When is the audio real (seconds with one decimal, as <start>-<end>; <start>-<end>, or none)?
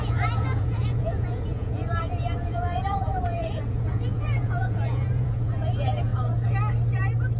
6.1-7.4